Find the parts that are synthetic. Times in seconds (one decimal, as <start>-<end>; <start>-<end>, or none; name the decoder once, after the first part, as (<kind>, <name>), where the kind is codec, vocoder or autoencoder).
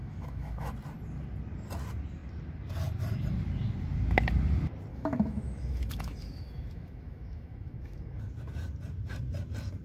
0.0-0.7 (autoencoder, DAC-VAE); 4.9-8.3